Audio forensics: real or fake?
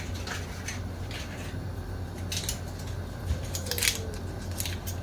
real